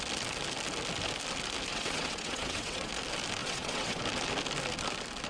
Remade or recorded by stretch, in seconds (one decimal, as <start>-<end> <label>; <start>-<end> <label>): 0.0-1.7 recorded; 1.7-2.9 remade; 2.9-3.4 recorded; 3.4-4.0 remade; 4.0-5.3 recorded